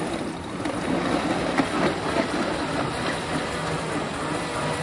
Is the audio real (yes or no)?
yes